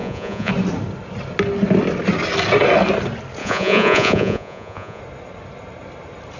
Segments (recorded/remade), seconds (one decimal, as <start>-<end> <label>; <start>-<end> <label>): 0.0-0.5 remade; 0.5-3.4 recorded; 3.4-5.0 remade; 5.0-6.4 recorded